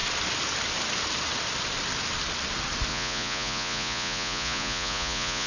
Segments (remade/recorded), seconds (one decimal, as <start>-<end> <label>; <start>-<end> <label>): 0.0-2.9 recorded; 2.9-5.5 remade